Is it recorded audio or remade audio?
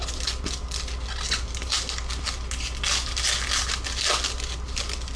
recorded